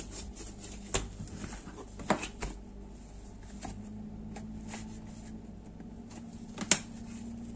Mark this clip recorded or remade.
recorded